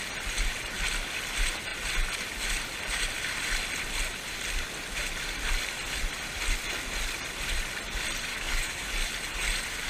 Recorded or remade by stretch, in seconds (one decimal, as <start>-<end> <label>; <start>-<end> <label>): 0.0-8.3 recorded; 8.3-8.9 remade; 8.9-9.9 recorded